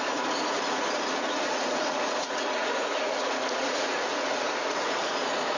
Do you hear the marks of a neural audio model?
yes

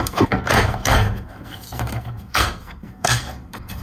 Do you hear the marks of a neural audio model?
yes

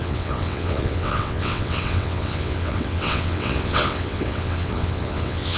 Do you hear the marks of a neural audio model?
yes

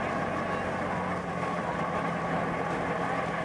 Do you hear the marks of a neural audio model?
no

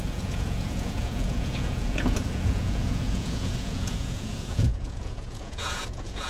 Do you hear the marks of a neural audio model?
yes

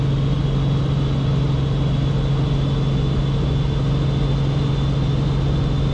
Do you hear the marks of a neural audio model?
no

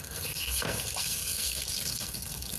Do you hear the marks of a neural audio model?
yes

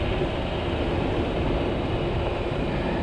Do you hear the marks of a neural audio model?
no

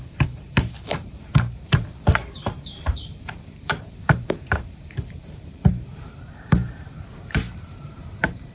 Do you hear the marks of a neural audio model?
yes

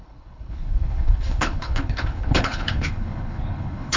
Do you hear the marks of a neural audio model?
yes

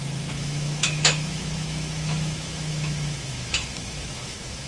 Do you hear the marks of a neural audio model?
yes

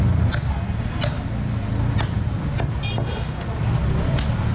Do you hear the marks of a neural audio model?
no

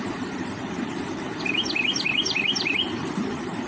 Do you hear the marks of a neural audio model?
yes